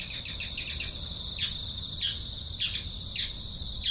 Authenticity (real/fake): real